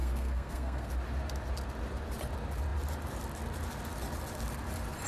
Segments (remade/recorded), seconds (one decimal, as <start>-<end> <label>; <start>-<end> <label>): 0.0-0.9 remade; 0.9-5.1 recorded

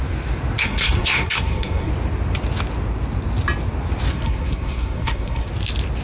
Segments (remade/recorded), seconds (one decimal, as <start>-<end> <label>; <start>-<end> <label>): 0.0-0.6 recorded; 0.6-1.9 remade; 1.9-4.1 recorded; 4.1-5.5 remade; 5.5-6.0 recorded

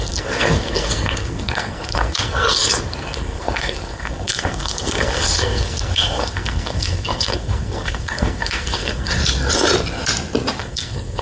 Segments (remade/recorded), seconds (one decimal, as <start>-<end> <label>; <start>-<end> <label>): 0.0-9.2 remade; 9.2-10.6 recorded; 10.6-11.2 remade

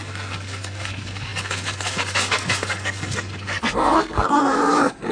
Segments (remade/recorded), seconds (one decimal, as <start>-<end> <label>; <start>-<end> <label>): 0.0-5.1 remade

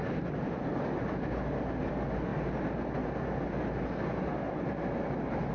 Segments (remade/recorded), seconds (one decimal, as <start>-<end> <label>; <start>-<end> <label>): 0.0-5.5 recorded

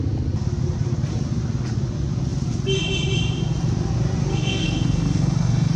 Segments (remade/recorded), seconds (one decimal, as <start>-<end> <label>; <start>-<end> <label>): 0.0-4.3 recorded; 4.3-5.8 remade

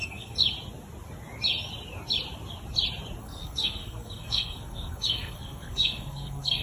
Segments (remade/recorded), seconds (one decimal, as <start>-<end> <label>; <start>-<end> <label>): 0.0-0.4 remade; 0.4-3.2 recorded; 3.2-6.6 remade

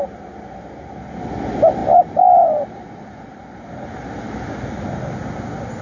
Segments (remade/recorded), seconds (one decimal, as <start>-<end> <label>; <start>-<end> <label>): 0.0-5.8 recorded